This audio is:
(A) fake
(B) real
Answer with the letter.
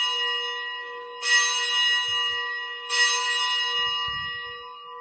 B